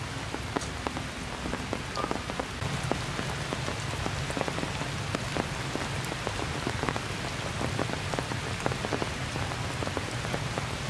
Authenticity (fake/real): real